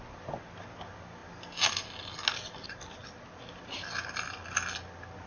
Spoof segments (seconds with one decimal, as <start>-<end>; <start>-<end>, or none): none